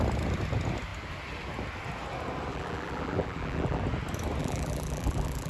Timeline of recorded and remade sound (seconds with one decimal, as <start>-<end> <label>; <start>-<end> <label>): 0.0-2.5 recorded; 2.5-3.8 remade; 3.8-4.4 recorded; 4.4-5.5 remade

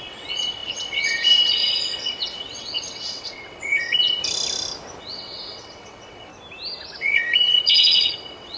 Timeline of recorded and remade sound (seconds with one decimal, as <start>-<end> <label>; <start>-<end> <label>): 0.0-4.2 remade; 4.2-5.0 recorded; 5.0-6.3 remade; 6.3-7.0 recorded; 7.0-8.6 remade

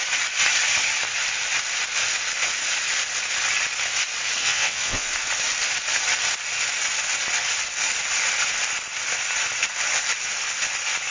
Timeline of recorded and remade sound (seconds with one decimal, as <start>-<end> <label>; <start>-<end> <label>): 0.0-4.4 recorded; 4.4-5.1 remade; 5.1-11.1 recorded